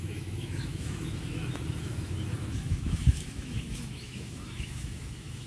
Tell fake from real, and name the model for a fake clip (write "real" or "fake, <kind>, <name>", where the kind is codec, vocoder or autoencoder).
fake, autoencoder, DAC-VAE